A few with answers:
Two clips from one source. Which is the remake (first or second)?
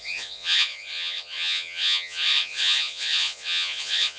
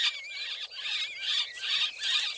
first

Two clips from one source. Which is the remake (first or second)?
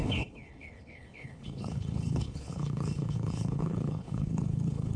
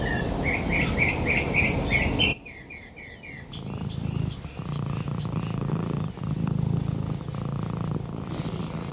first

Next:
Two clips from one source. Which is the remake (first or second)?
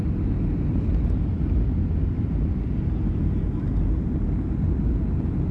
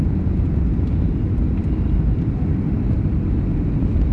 second